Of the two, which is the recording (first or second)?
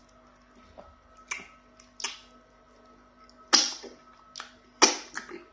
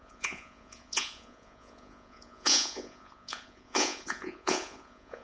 first